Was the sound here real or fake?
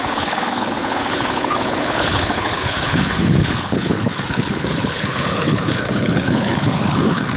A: fake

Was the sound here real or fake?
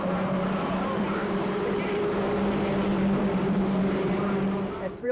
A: fake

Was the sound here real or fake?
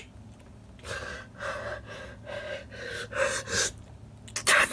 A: real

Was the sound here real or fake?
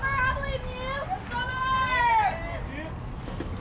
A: real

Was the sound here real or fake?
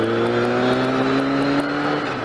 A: real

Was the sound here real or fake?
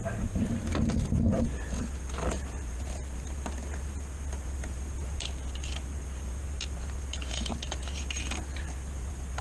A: real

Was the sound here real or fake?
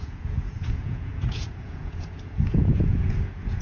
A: fake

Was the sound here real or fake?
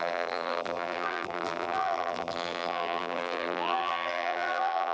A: fake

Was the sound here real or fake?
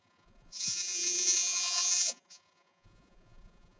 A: fake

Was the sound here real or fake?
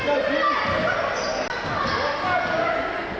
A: real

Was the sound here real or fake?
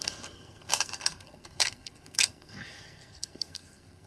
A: fake